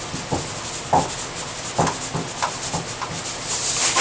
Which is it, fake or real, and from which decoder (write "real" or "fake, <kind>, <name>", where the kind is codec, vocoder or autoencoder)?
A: real